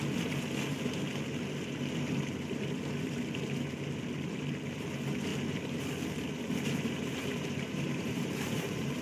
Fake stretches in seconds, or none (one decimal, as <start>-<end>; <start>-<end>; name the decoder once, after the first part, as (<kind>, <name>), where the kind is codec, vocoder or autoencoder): 7.1-9.0 (vocoder, BigVGAN v2)